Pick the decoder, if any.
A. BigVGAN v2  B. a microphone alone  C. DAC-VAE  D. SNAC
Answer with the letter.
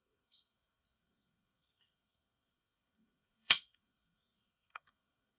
D